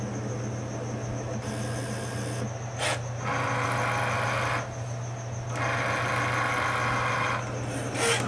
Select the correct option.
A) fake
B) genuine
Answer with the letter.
B